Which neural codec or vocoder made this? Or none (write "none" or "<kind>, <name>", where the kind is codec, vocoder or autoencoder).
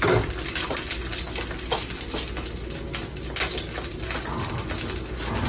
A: none